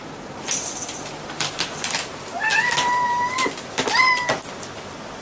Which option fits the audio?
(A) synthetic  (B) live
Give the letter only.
A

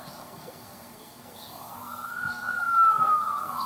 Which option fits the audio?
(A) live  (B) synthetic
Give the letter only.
B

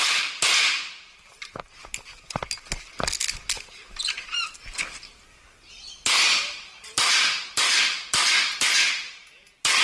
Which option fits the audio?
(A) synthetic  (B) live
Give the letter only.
B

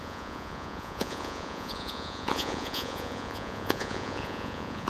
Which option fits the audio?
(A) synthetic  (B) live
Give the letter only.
A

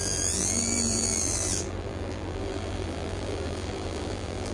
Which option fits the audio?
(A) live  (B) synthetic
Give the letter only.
B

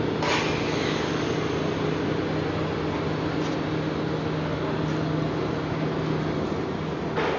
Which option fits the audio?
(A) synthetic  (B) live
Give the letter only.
B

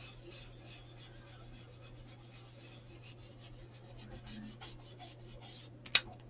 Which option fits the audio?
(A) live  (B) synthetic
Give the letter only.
A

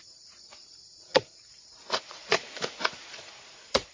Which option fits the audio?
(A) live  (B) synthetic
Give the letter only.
B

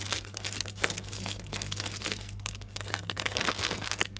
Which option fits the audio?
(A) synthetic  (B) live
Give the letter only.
A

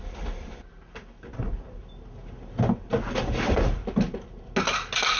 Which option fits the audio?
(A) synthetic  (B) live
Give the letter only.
B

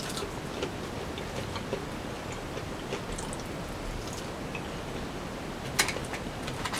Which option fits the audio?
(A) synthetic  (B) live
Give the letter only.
B